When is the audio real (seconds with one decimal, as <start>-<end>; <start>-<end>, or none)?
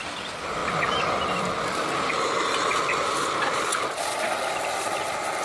0.6-3.1; 3.7-4.8